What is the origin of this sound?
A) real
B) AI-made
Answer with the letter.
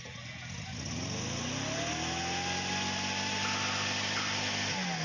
A